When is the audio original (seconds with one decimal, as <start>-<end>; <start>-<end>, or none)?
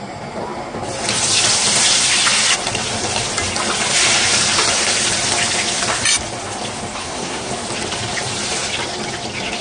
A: 0.0-7.0; 7.5-9.6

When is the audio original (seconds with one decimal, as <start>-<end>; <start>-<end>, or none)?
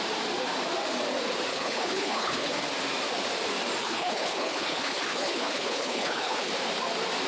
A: 0.0-1.5; 2.5-3.8; 6.5-7.3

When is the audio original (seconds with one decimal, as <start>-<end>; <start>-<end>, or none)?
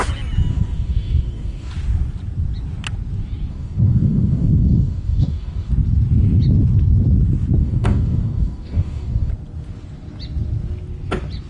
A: 0.0-0.5; 1.7-3.5; 5.7-7.6; 9.3-11.5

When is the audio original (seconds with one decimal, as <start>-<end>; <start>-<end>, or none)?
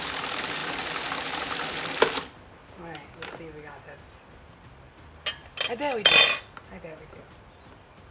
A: 0.0-8.1